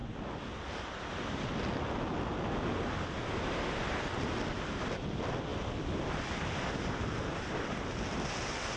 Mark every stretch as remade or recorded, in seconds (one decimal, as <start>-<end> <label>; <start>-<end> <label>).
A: 0.0-8.8 recorded